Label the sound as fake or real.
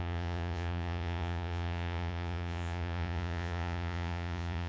fake